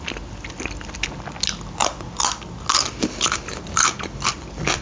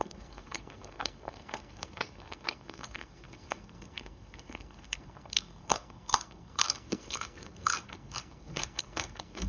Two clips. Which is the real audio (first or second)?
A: first